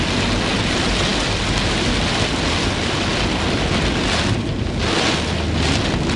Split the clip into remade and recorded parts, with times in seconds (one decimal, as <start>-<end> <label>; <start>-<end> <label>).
0.0-6.2 recorded